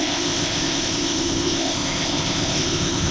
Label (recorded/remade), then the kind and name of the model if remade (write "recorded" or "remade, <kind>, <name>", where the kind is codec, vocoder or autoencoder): remade, codec, ZipCodec